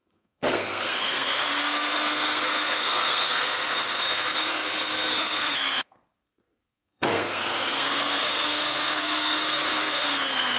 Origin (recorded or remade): remade